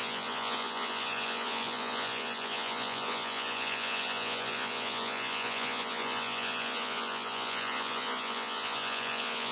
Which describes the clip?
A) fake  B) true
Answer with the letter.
A